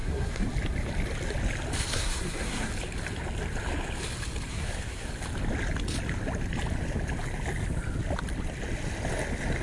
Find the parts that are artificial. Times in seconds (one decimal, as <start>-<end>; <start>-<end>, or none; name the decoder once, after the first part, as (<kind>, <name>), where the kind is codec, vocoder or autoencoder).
0.0-0.5 (codec, SNAC); 1.9-2.7; 4.5-5.1